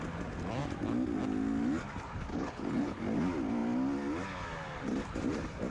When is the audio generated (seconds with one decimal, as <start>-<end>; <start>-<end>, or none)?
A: 2.3-3.0